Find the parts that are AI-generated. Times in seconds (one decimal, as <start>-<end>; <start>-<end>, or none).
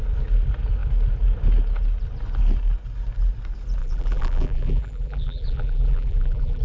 3.8-6.6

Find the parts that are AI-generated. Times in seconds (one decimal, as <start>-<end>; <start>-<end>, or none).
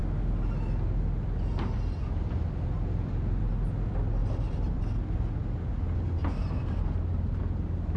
4.2-5.3; 6.2-7.4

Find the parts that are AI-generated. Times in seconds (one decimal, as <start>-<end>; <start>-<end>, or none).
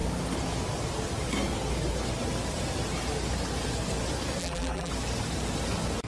4.4-4.9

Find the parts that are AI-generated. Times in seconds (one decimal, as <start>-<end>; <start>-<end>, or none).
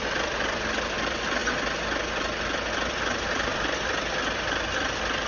0.0-1.4; 2.7-5.3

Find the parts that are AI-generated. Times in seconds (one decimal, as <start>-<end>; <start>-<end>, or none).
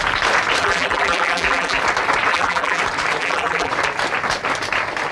0.6-1.8; 2.3-2.8; 3.2-3.7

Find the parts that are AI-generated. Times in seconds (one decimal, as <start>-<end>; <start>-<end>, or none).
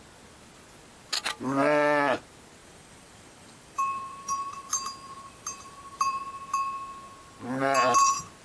2.6-6.2